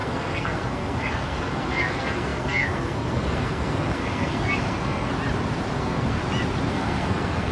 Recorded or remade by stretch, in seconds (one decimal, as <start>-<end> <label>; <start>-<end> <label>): 0.0-5.1 remade; 5.1-5.8 recorded; 5.8-6.2 remade; 6.2-6.7 recorded; 6.7-7.5 remade